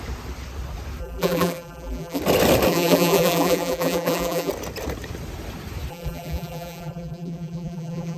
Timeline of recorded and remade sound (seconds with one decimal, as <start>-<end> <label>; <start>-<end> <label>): 0.0-1.0 recorded; 1.0-2.2 remade; 2.2-2.7 recorded; 2.7-4.5 remade; 4.5-5.9 recorded; 5.9-8.2 remade

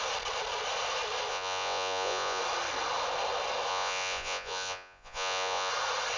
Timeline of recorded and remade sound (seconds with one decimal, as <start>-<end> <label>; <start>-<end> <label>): 0.0-1.3 recorded; 1.3-2.4 remade; 2.4-3.7 recorded; 3.7-5.7 remade; 5.7-6.2 recorded